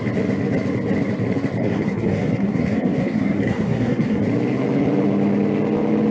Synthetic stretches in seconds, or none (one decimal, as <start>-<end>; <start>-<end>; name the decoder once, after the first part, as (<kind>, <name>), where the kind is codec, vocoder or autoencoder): 1.6-4.2 (codec, SNAC)